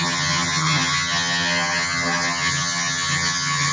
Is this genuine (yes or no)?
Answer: no